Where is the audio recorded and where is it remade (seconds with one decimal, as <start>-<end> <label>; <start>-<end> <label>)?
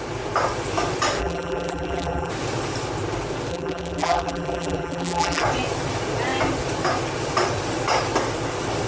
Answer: 0.0-1.2 recorded; 1.2-2.3 remade; 2.3-3.5 recorded; 3.5-5.4 remade; 5.4-8.9 recorded